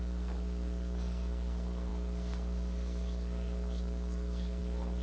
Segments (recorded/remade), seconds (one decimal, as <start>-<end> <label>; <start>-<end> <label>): 0.0-5.0 remade